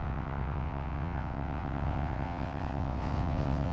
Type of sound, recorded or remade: remade